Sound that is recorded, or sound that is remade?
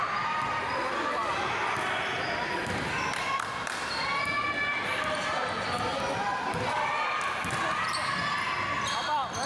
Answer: recorded